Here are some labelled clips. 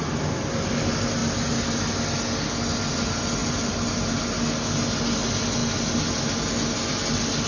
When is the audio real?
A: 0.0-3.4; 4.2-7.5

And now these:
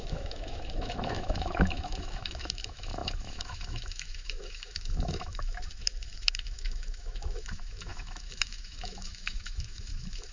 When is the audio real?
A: none

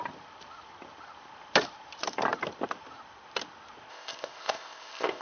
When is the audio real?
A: 0.0-3.9

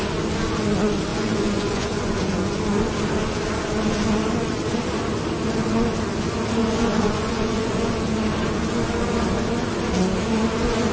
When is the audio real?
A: 0.0-1.1; 2.6-6.6; 7.9-10.9

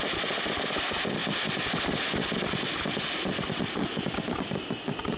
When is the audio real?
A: 0.0-5.2

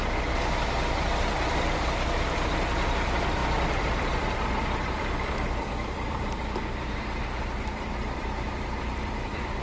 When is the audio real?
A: 0.0-1.0

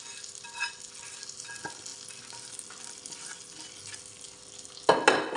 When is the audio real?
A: 0.0-5.4